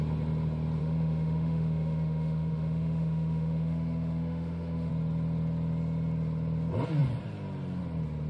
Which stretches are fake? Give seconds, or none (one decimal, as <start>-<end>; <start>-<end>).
0.8-4.9

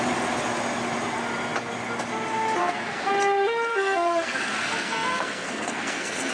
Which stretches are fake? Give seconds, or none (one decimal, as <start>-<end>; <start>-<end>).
2.6-3.1; 3.7-6.3

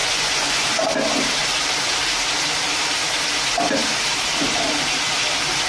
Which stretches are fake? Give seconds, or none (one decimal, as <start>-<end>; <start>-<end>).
0.0-0.7

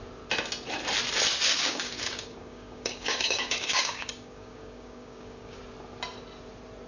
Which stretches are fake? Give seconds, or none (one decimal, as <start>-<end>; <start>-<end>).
1.5-5.6

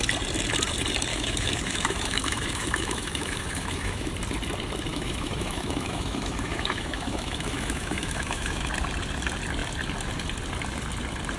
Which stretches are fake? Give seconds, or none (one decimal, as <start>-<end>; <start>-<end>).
1.1-4.1; 4.9-8.7

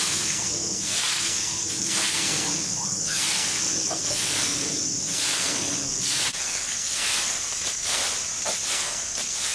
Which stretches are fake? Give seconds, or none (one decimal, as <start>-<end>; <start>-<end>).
0.0-8.0; 8.7-9.5